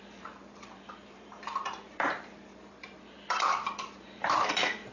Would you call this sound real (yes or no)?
no